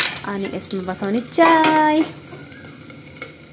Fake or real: real